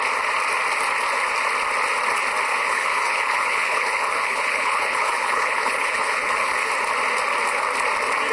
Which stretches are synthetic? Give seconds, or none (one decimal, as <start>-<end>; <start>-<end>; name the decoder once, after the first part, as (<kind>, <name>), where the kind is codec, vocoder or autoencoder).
2.5-6.7 (codec, HILCodec)